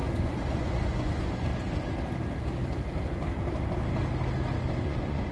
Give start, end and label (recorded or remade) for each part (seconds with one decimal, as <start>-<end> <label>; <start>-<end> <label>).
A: 0.0-1.5 remade; 1.5-4.7 recorded; 4.7-5.3 remade